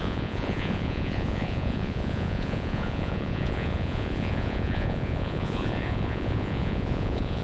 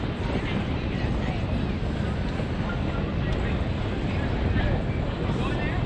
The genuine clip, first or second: second